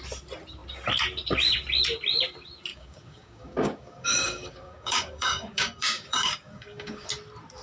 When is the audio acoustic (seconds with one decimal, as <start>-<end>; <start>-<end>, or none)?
0.0-2.7; 7.1-7.6